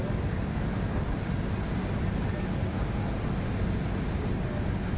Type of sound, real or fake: real